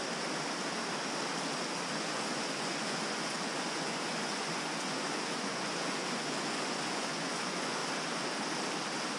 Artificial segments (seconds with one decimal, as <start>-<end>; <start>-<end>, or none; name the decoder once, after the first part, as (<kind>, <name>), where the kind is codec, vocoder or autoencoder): 1.9-7.8 (vocoder, Vocos)